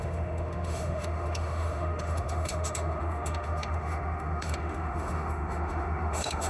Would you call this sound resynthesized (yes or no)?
yes